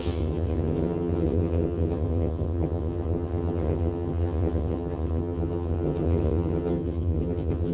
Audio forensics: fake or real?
fake